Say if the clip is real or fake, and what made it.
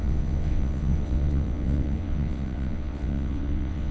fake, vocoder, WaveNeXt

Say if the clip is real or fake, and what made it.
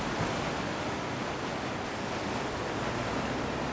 real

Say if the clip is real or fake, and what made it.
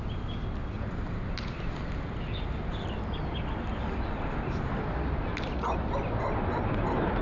real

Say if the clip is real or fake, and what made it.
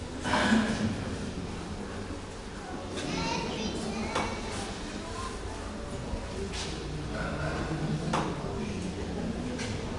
real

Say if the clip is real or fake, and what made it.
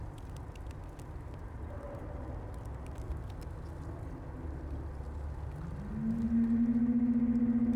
real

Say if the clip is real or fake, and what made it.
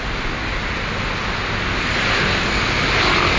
real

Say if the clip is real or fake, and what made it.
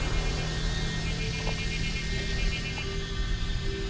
real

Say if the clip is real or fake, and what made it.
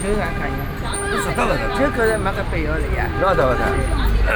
real